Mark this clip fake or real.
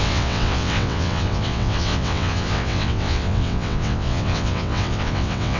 fake